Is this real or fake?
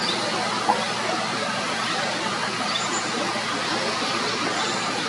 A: real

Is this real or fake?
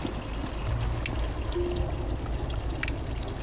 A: real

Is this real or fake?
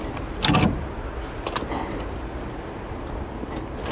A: real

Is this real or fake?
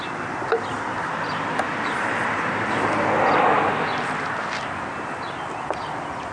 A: real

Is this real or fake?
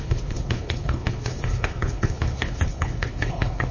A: fake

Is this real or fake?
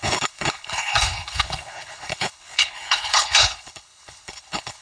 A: fake